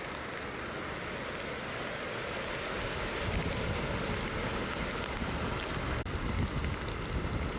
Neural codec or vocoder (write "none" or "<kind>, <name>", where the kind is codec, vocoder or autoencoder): none